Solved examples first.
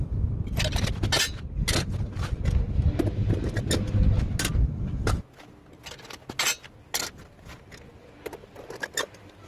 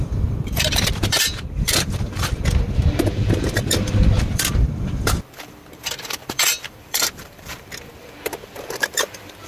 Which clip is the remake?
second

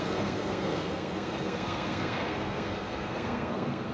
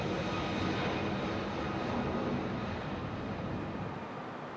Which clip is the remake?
first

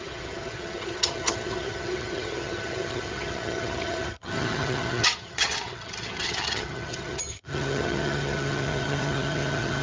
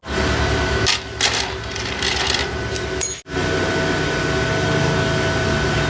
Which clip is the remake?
first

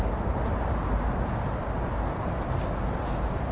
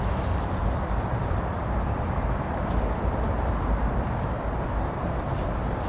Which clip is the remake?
second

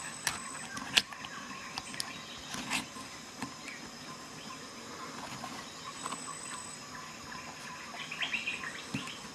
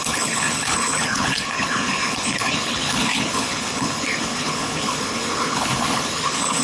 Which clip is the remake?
second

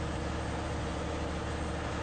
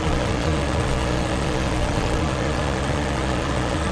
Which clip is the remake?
second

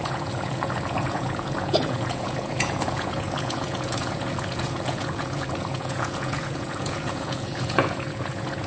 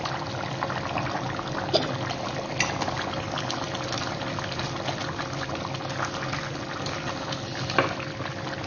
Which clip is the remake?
first